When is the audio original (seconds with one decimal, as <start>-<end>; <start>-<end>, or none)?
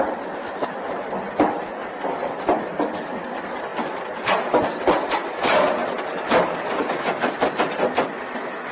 0.0-8.7